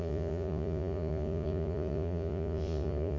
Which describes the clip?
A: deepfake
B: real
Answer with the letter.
A